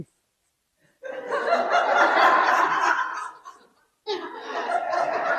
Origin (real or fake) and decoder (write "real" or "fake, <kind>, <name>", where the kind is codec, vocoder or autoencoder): real